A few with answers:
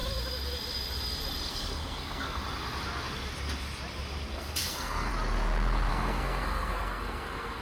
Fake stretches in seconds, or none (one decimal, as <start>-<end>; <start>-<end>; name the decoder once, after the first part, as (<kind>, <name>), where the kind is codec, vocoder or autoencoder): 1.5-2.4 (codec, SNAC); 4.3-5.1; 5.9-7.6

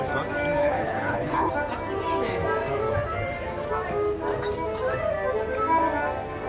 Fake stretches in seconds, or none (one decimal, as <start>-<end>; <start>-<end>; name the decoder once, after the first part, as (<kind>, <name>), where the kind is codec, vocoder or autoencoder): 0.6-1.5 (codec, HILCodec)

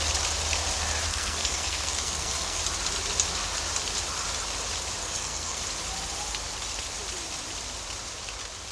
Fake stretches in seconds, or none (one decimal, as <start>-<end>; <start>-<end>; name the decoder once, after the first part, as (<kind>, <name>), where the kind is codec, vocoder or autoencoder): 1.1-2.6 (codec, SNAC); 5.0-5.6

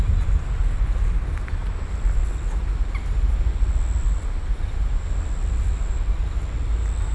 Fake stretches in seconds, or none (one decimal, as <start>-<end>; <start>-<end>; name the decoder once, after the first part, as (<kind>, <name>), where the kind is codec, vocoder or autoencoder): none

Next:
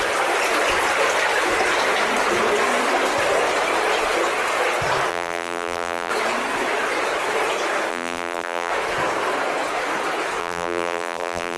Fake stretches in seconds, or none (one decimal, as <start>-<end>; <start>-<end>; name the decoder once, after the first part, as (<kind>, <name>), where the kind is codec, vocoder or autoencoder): 5.1-6.1 (vocoder, BigVGAN v2); 7.9-8.7; 10.4-11.6